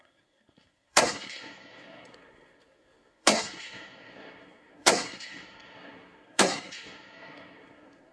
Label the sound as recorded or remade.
remade